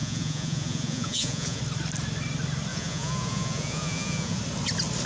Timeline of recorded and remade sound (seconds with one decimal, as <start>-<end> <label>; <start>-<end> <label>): 0.0-1.6 remade; 1.6-2.7 recorded; 2.7-4.4 remade; 4.4-5.1 recorded